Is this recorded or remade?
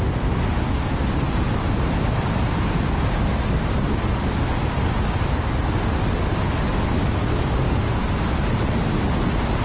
recorded